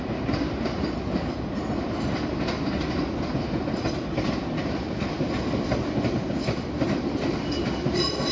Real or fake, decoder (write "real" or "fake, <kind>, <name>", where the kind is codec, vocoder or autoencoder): fake, vocoder, BigVGAN v2